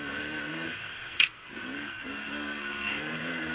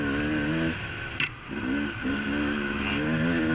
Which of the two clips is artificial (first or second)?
first